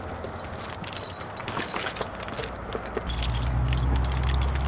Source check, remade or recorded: recorded